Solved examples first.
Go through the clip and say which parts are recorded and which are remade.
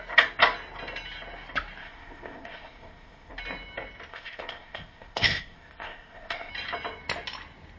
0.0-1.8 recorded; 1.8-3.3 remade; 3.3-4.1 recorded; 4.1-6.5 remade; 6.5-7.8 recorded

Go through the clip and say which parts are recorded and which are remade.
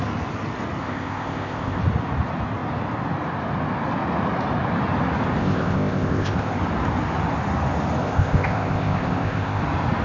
0.0-0.8 recorded; 0.8-1.8 remade; 1.8-5.4 recorded; 5.4-6.6 remade; 6.6-8.0 recorded; 8.0-9.6 remade; 9.6-10.0 recorded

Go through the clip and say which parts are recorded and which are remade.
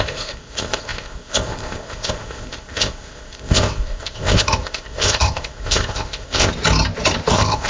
0.0-6.5 remade; 6.5-7.3 recorded; 7.3-7.7 remade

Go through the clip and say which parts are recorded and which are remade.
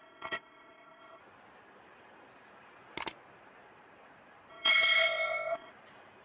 0.0-1.2 remade; 1.2-4.5 recorded; 4.5-5.7 remade; 5.7-6.2 recorded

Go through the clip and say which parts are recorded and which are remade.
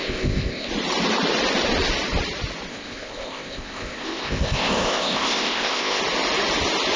0.0-0.7 remade; 0.7-2.7 recorded; 2.7-6.0 remade; 6.0-7.0 recorded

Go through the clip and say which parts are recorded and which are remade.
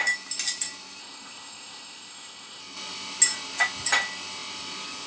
0.0-1.0 recorded; 1.0-2.6 remade; 2.6-5.1 recorded